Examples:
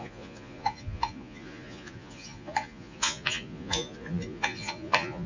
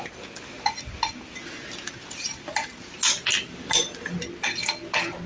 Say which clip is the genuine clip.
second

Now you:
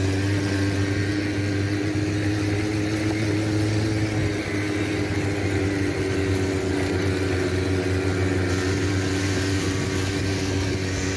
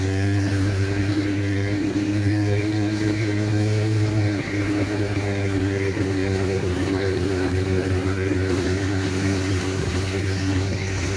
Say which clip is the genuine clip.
first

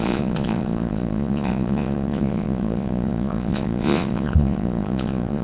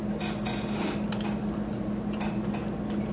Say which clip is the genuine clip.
second